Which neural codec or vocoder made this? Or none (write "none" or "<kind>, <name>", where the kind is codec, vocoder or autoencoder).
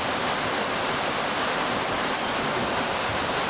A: none